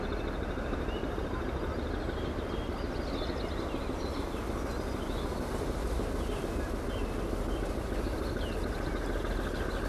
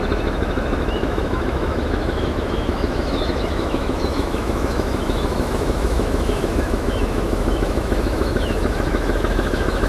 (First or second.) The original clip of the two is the first